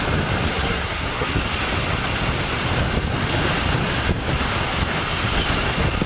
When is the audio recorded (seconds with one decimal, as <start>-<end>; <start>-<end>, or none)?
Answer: 0.0-0.5; 1.4-6.1